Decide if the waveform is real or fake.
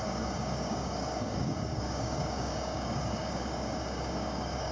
fake